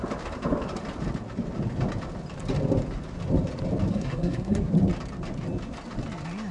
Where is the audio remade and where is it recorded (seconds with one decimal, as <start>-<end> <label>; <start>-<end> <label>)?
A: 0.0-3.9 recorded; 3.9-4.7 remade; 4.7-6.5 recorded